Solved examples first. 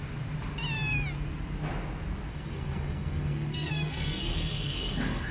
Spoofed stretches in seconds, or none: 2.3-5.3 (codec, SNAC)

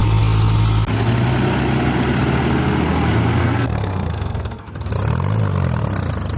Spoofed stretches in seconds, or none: 3.4-4.9 (codec, SNAC)

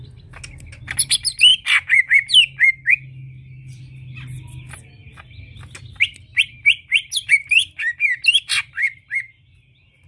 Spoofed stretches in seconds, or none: none

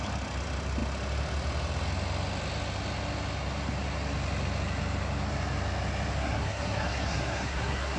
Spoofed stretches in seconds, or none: 6.2-8.0 (codec, SNAC)

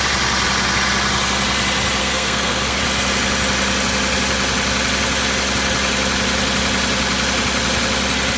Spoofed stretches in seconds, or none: 2.0-2.8 (codec, SNAC)

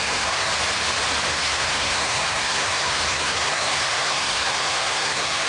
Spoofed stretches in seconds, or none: 0.0-0.5 (codec, SNAC); 1.3-5.5

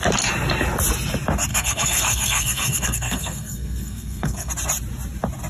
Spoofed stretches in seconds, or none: 1.5-4.5 (codec, SNAC)

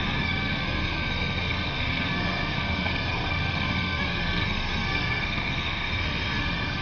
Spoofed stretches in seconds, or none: 0.0-6.8 (codec, SNAC)